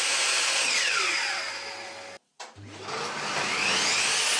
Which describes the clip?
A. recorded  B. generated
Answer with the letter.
A